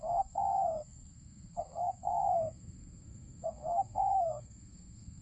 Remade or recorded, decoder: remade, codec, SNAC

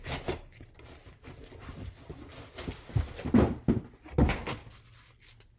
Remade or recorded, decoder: recorded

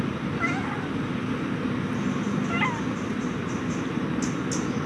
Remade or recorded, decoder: recorded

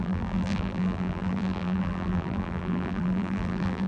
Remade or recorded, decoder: remade, vocoder, BigVGAN v2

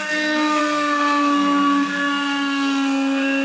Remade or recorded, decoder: remade, codec, SNAC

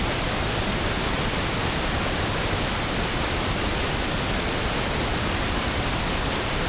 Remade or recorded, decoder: recorded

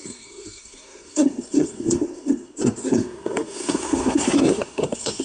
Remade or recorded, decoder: remade, codec, SNAC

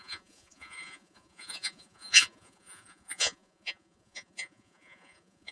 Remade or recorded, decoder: remade, vocoder, Vocos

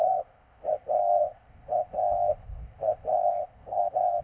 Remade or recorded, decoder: remade, codec, ZipCodec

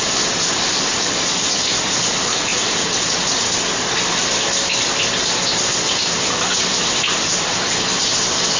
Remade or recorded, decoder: recorded